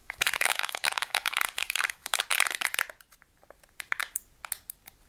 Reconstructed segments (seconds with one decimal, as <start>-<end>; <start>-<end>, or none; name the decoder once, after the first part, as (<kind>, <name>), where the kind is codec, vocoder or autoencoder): 0.0-2.2 (codec, DAC)